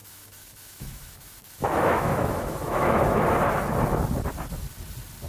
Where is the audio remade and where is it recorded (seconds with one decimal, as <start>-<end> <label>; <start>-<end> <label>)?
0.0-3.2 remade; 3.2-5.3 recorded